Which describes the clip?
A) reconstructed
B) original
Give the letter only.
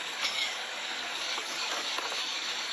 A